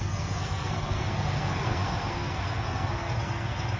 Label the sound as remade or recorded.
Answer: remade